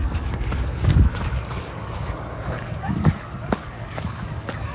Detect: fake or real fake